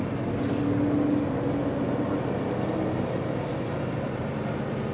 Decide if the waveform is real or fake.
real